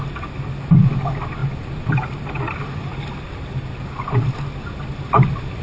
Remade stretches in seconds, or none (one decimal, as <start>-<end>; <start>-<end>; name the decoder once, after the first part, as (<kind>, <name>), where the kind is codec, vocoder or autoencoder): 1.4-3.1 (vocoder, BigVGAN v2)